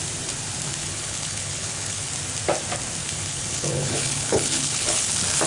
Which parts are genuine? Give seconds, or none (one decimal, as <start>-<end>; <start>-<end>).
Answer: 0.0-0.8; 2.1-3.0; 5.1-5.5